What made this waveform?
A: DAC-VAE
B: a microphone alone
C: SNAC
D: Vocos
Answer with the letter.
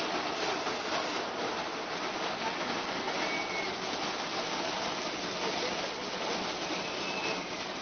B